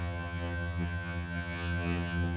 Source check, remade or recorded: remade